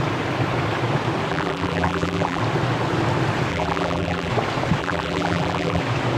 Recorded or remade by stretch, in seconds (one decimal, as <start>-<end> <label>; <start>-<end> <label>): 0.0-1.3 recorded; 1.3-2.4 remade; 2.4-3.5 recorded; 3.5-4.3 remade; 4.3-4.8 recorded; 4.8-5.8 remade; 5.8-6.2 recorded